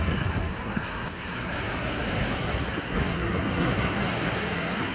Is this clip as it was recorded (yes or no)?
no